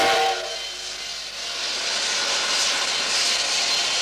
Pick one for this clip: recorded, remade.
recorded